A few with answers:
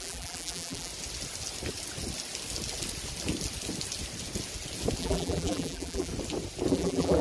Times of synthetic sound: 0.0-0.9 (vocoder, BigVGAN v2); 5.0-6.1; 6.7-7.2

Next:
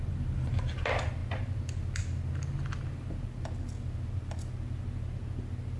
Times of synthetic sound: 0.0-5.8 (vocoder, BigVGAN v2)

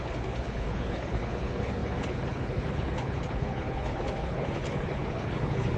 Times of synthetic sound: 0.0-5.8 (codec, HILCodec)